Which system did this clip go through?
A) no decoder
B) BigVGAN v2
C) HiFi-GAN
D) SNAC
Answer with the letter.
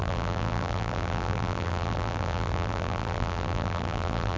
B